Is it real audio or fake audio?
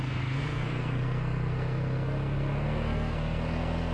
fake